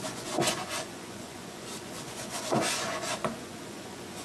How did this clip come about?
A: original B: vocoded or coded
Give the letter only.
B